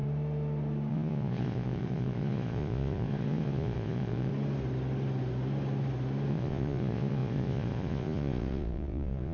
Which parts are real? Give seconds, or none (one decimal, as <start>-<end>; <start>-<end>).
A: 0.0-0.9; 4.3-6.3